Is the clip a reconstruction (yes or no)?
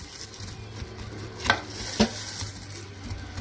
no